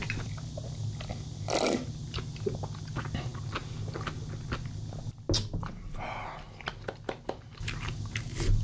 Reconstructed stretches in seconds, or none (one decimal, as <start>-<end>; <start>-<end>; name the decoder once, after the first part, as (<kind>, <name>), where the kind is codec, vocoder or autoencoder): none